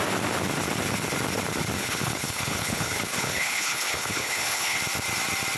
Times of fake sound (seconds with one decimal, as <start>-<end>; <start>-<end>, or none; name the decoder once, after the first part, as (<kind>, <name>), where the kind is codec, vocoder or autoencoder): 1.8-4.8 (codec, HILCodec)